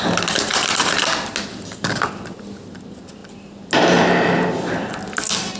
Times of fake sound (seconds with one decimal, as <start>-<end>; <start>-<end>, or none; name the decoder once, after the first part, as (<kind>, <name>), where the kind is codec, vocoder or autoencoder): 0.5-1.0 (vocoder, BigVGAN v2)